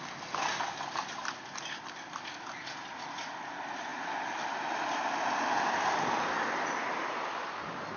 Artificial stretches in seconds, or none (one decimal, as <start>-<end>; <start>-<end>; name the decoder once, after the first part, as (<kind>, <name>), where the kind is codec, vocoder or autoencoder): 3.9-4.7 (vocoder, BigVGAN v2)